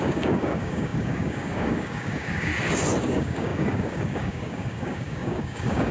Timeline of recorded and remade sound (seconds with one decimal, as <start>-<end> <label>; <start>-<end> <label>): 0.0-2.5 remade; 2.5-3.0 recorded; 3.0-5.9 remade